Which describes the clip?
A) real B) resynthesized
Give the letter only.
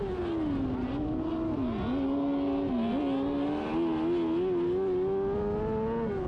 A